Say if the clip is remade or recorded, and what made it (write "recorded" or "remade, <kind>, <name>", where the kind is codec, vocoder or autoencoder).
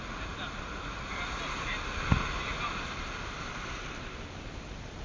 recorded